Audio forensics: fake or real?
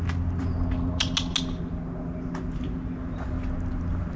real